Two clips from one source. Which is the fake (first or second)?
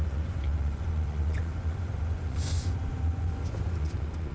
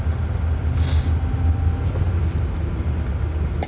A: first